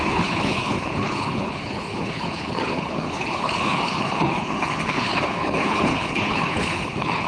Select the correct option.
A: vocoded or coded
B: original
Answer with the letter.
A